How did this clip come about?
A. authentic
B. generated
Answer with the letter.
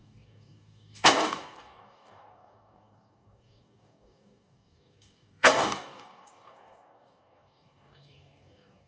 B